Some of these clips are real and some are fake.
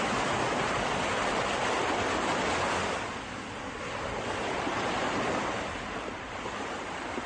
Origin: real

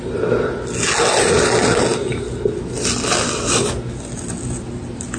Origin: real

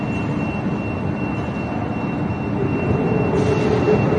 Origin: real